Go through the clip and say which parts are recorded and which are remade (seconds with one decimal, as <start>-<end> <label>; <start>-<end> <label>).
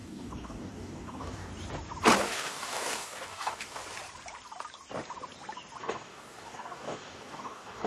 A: 0.0-1.5 remade; 1.5-2.2 recorded; 2.2-3.8 remade; 3.8-5.8 recorded; 5.8-7.9 remade